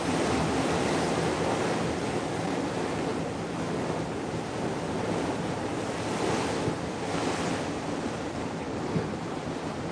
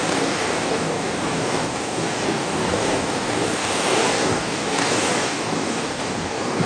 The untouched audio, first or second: first